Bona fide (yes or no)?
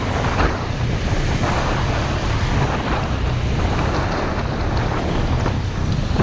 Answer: yes